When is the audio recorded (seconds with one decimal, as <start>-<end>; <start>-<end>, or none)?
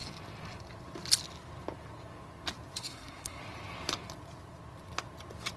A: 0.0-2.8; 3.4-5.6